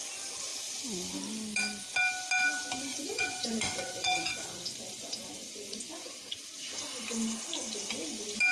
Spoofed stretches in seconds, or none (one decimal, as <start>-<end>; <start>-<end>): 2.9-6.3